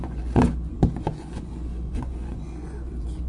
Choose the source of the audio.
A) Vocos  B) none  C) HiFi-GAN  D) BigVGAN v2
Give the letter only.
A